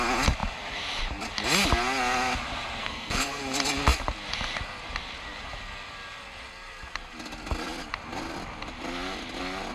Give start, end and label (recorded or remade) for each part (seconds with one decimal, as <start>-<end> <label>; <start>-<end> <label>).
0.0-2.8 recorded; 2.8-3.4 remade; 3.4-9.7 recorded